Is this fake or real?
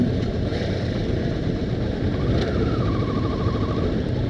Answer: fake